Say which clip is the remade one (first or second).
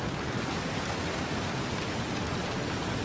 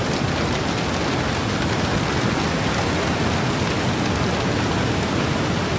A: first